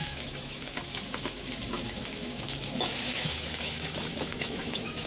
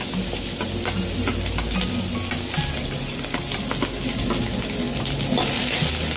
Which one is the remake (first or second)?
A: first